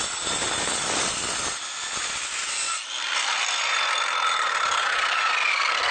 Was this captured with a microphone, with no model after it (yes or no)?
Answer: yes